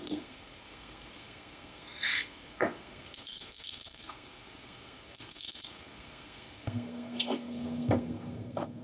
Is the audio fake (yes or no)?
yes